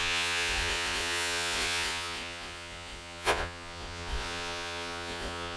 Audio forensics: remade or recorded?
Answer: remade